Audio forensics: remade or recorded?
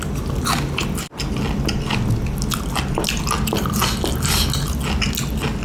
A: recorded